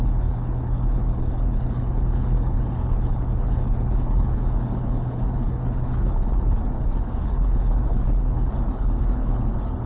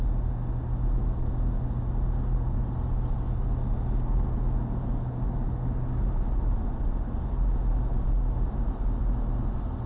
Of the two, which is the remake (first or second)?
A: first